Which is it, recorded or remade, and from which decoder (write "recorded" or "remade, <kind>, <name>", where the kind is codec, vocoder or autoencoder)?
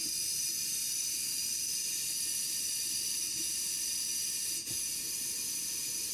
recorded